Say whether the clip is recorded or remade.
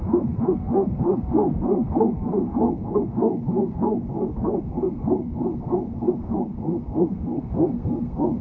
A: remade